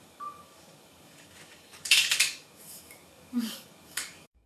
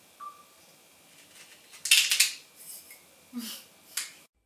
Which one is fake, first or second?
first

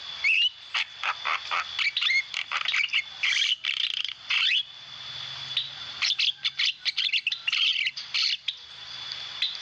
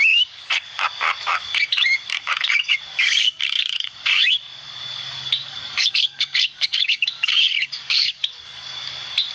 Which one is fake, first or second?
second